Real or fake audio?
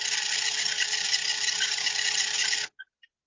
real